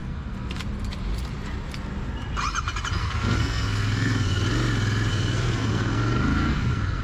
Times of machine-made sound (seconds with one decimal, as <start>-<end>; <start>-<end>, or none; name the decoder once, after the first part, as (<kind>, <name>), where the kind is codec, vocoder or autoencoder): 0.0-0.6 (codec, SNAC); 3.0-4.4; 5.1-7.0